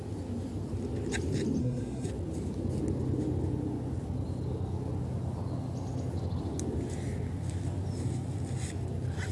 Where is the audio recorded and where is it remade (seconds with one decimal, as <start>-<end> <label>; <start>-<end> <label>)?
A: 0.0-1.6 recorded; 1.6-2.1 remade; 2.1-9.3 recorded